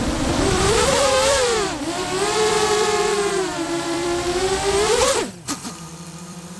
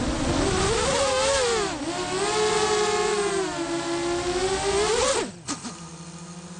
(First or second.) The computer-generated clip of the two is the first